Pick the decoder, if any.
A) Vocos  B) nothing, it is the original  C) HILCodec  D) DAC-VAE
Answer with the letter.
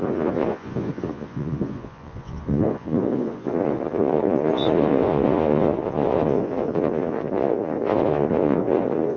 A